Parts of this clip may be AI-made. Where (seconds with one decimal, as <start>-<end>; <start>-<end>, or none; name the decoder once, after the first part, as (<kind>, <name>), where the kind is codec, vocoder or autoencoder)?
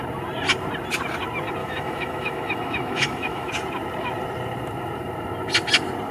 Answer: 1.6-3.5 (autoencoder, DAC-VAE)